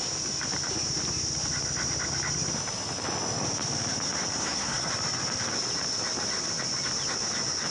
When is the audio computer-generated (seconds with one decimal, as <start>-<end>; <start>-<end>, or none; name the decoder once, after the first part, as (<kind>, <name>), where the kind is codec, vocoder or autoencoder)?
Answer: 4.4-4.9 (codec, SNAC)